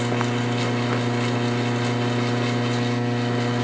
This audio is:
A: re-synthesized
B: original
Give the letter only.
B